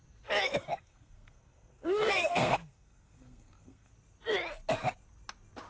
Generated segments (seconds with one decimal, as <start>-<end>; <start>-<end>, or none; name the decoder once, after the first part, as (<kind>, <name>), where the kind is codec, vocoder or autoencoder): 0.7-3.9 (codec, SNAC)